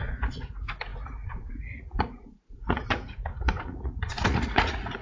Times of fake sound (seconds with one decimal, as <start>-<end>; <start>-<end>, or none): 0.0-5.0